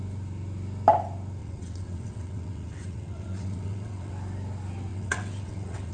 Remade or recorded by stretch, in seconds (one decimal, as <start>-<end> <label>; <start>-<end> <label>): 0.0-1.4 recorded; 1.4-4.1 remade; 4.1-4.9 recorded; 4.9-5.9 remade